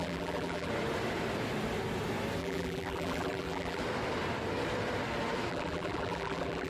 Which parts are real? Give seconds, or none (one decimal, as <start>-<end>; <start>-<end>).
0.7-2.4; 3.8-5.5